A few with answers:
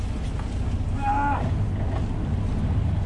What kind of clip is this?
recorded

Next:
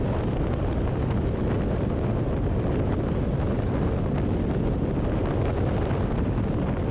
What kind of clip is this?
recorded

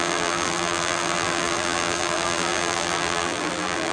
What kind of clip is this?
remade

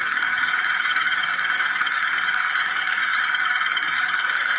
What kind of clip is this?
remade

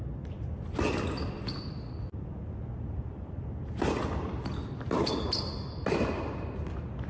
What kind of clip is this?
recorded